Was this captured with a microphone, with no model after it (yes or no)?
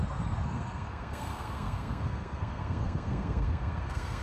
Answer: no